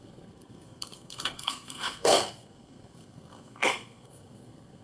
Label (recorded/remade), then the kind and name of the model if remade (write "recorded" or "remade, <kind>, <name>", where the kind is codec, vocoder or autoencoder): remade, codec, SNAC